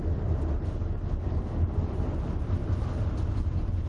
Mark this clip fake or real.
real